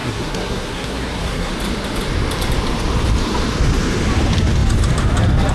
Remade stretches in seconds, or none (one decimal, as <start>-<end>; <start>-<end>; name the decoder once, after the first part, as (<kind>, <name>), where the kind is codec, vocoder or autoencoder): 0.0-1.5 (codec, SNAC)